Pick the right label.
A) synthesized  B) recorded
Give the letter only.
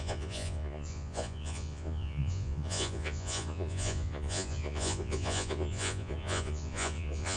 A